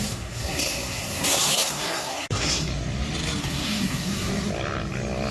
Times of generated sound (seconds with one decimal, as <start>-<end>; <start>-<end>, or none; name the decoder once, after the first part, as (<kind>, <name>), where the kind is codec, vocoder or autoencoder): 0.0-2.7 (codec, SNAC); 3.4-4.3

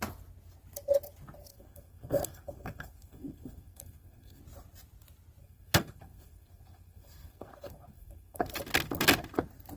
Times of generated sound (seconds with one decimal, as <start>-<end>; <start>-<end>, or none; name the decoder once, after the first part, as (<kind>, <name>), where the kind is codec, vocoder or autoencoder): 1.5-4.4 (codec, SNAC); 5.4-8.5

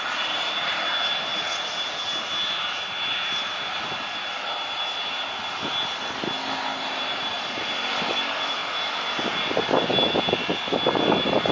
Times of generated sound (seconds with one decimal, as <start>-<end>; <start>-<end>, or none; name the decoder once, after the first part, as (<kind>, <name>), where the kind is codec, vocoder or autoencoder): none

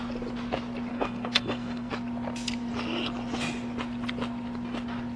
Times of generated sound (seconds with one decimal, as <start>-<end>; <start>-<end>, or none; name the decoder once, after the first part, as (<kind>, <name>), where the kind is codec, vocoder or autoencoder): 0.9-1.9 (codec, SNAC)

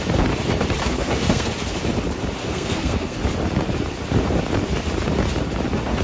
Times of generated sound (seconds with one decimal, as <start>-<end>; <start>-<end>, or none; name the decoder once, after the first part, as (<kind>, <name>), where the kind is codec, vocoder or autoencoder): 0.8-1.5 (codec, SNAC); 2.4-3.2

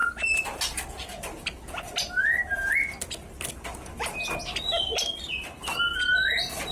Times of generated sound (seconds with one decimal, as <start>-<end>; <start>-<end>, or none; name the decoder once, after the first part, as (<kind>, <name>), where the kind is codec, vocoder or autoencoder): none

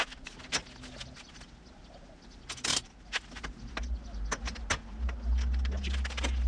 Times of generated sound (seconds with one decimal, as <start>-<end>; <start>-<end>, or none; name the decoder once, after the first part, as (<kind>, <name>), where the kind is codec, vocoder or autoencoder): none